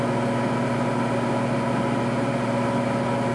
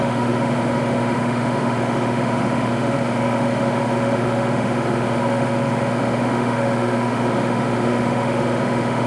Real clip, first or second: first